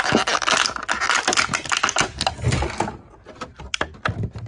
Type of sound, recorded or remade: recorded